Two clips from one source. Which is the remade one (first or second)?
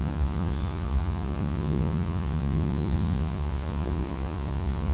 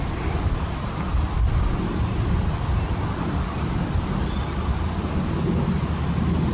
first